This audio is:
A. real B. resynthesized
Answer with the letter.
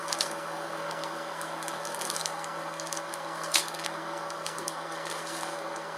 B